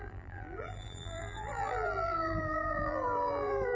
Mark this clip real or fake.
fake